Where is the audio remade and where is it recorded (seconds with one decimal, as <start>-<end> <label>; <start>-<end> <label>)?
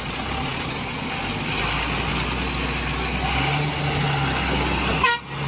0.0-5.5 recorded